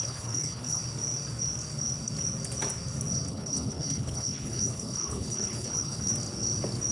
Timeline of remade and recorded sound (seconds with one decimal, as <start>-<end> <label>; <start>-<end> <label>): 0.0-0.8 remade; 0.8-3.3 recorded; 3.3-6.1 remade; 6.1-6.9 recorded